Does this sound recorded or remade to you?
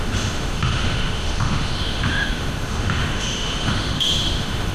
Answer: remade